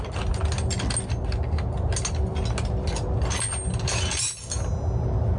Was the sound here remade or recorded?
recorded